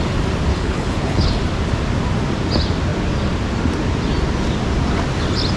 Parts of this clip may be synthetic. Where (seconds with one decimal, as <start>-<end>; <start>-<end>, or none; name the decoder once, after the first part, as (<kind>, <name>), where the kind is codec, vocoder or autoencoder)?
0.5-1.3 (codec, HILCodec)